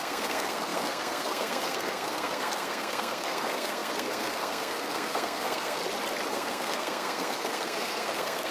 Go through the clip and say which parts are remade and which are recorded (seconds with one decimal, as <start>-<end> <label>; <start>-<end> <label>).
0.0-5.8 remade; 5.8-6.3 recorded; 6.3-8.5 remade